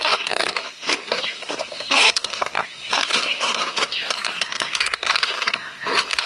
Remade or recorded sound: remade